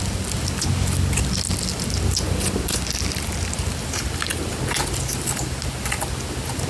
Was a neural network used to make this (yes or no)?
no